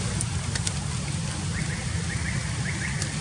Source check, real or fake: real